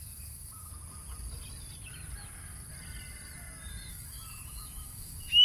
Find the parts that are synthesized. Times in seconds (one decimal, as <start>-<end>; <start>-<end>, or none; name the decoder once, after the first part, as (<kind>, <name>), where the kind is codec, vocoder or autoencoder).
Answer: 0.0-0.7 (autoencoder, DAC-VAE); 3.9-5.4